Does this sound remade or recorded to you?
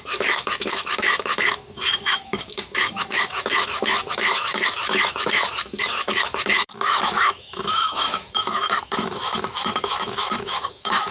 remade